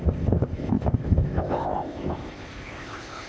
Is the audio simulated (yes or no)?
yes